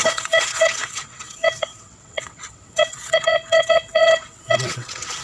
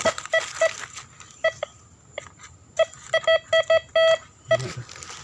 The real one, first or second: second